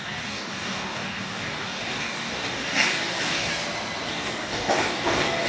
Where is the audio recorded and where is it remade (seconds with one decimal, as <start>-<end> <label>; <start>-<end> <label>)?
0.0-3.5 remade; 3.5-4.1 recorded; 4.1-5.5 remade